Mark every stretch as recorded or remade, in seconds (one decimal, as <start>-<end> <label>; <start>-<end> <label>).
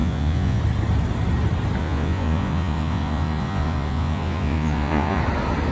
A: 0.0-0.6 remade; 0.6-1.8 recorded; 1.8-5.2 remade; 5.2-5.7 recorded